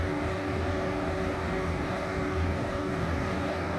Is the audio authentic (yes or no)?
no